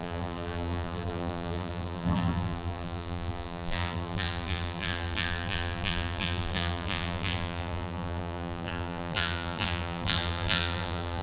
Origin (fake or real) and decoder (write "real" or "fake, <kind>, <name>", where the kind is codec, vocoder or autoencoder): fake, vocoder, BigVGAN v2